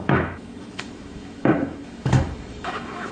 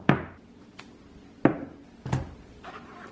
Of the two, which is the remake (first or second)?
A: first